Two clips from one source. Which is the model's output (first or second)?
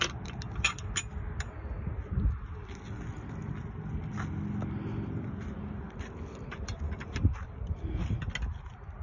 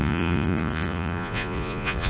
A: second